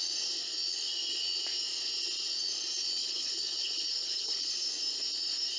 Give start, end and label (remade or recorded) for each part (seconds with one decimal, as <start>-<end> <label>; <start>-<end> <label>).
0.0-3.0 recorded; 3.0-4.5 remade; 4.5-5.6 recorded